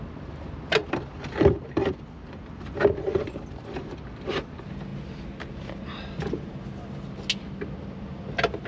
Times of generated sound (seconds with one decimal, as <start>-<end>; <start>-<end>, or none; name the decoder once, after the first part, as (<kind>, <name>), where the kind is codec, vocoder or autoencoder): 0.8-4.0 (vocoder, BigVGAN v2)

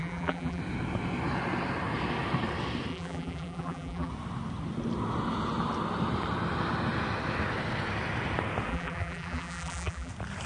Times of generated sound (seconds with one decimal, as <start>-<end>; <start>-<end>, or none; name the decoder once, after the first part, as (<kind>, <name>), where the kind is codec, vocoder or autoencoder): 0.0-0.6 (vocoder, BigVGAN v2); 2.9-4.1; 8.7-10.1

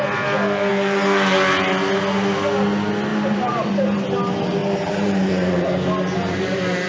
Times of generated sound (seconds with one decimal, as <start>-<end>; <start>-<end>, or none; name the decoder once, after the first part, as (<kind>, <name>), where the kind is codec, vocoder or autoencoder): 3.1-3.7 (vocoder, BigVGAN v2); 4.6-5.8

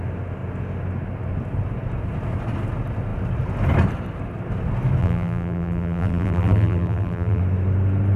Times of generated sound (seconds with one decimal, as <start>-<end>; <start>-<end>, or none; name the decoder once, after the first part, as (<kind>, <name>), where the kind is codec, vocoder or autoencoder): 5.0-7.4 (vocoder, BigVGAN v2)

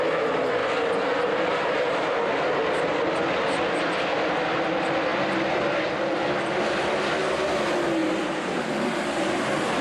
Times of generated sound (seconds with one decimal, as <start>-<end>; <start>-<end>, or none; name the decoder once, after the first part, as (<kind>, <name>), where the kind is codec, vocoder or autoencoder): 0.6-2.2 (vocoder, BigVGAN v2); 5.1-6.6; 8.0-9.2

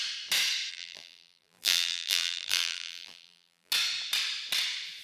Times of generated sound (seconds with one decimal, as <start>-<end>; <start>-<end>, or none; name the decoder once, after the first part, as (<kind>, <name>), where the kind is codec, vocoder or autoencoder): 0.7-3.7 (vocoder, BigVGAN v2)

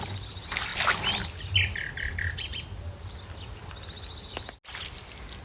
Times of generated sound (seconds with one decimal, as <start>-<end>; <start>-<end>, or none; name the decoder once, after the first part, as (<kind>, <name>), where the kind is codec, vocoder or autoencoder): none